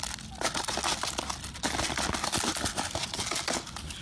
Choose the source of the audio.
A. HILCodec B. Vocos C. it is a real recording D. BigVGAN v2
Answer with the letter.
C